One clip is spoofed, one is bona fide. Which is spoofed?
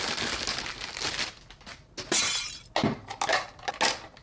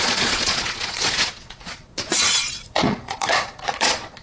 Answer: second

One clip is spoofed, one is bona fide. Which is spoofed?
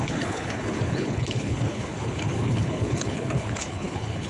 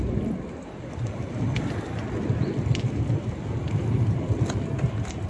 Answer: first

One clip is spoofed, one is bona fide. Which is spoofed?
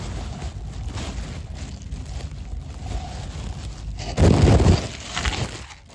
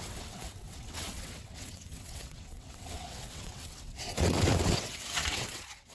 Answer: second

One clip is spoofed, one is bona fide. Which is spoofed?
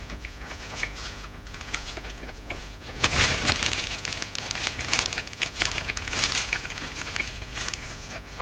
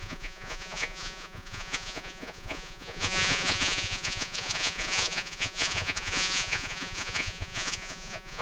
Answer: second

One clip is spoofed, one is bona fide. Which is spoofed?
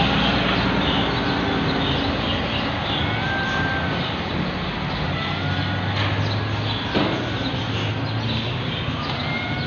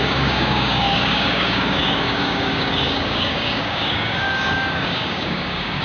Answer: second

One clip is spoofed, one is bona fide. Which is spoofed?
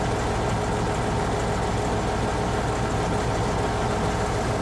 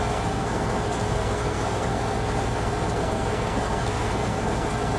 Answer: second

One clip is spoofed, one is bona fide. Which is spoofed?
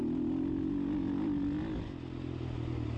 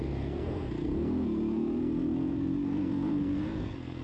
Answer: second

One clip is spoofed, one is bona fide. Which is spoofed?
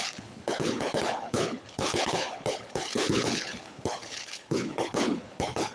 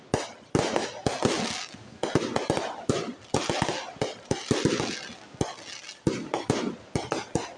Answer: first